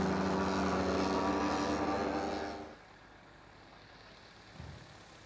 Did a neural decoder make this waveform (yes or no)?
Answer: no